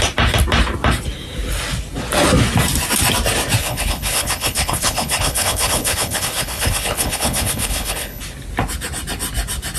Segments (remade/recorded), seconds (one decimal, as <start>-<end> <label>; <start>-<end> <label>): 0.0-3.6 recorded; 3.6-8.2 remade; 8.2-9.8 recorded